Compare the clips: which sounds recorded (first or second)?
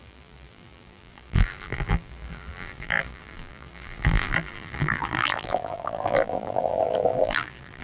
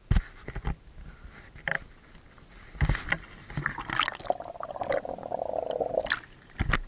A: second